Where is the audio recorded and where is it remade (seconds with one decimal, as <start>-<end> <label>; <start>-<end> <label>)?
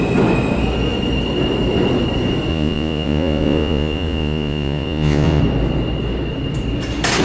0.0-2.5 recorded; 2.5-5.4 remade; 5.4-7.2 recorded